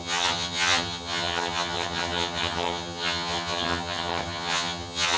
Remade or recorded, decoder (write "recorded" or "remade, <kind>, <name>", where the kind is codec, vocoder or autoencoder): remade, vocoder, HiFi-GAN